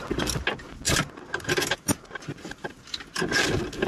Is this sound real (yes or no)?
yes